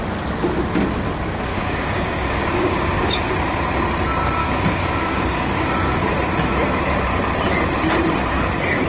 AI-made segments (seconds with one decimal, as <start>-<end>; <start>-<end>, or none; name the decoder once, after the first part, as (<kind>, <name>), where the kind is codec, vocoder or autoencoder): 1.5-3.1 (codec, DAC); 4.4-6.1